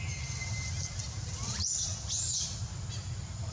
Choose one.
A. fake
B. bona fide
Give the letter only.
B